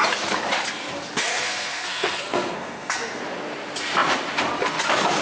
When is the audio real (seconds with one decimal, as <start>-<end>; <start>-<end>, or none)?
0.0-1.3; 3.2-5.2